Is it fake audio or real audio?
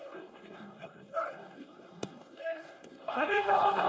fake